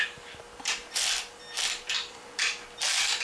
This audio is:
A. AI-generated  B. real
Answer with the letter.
A